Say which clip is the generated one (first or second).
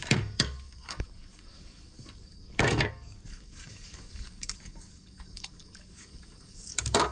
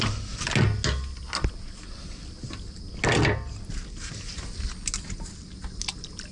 first